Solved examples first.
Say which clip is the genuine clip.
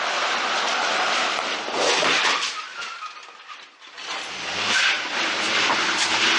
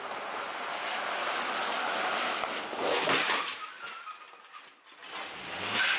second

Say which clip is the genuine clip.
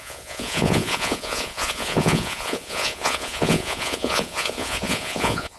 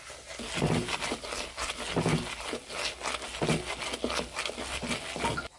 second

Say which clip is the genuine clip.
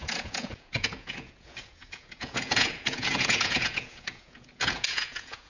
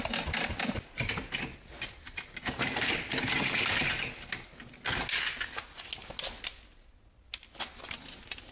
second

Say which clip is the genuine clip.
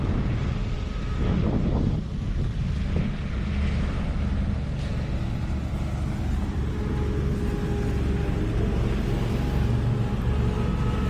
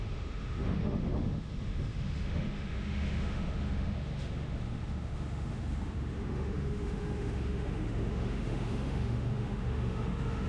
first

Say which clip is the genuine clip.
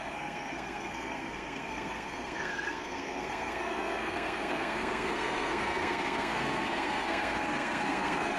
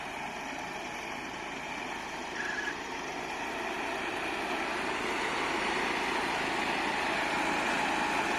second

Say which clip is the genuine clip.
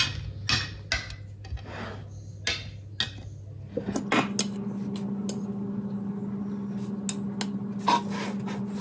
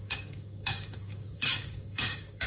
first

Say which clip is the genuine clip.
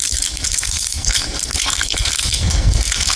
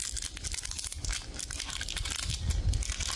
second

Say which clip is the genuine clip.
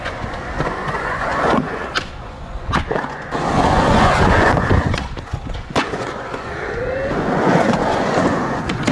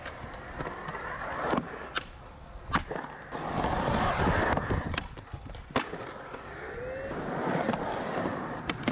second